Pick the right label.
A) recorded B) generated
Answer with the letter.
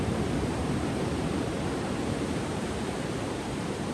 B